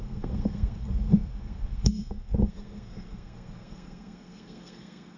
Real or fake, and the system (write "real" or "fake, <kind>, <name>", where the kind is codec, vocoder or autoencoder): fake, codec, SNAC